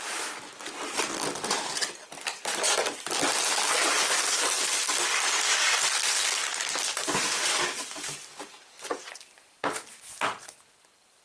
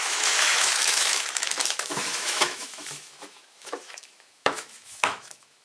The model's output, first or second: second